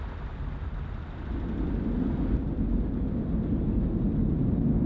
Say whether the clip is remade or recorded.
recorded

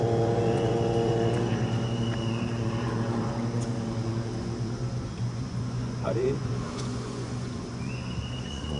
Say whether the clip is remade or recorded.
remade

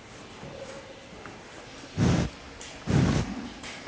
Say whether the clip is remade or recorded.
recorded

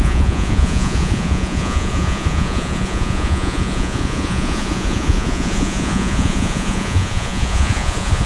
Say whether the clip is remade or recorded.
remade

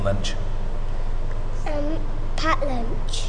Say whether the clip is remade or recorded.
recorded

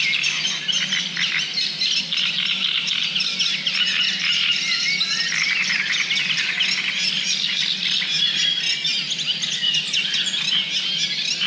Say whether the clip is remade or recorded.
recorded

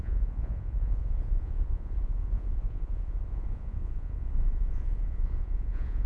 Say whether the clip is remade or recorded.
remade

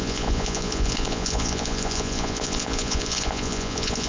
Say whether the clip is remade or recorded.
remade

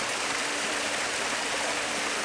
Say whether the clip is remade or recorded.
recorded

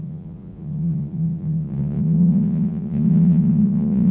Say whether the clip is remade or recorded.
remade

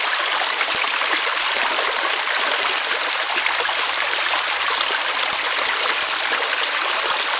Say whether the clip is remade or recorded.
recorded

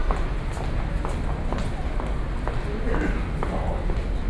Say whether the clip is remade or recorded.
recorded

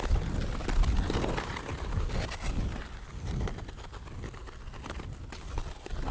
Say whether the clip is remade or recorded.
recorded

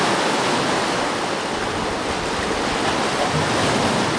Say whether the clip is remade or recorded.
recorded